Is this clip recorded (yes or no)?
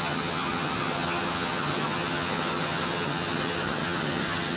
no